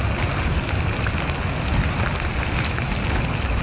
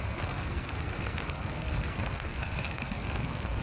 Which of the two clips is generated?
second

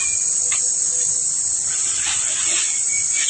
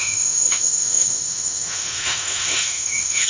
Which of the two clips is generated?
second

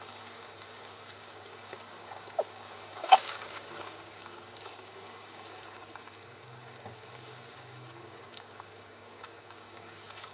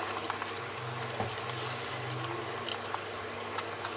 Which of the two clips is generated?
first